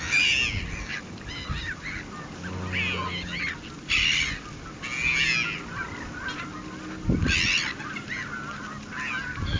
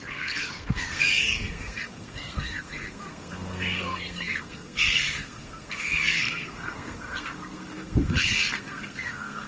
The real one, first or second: first